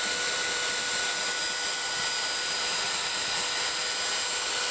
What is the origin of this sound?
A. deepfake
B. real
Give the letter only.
B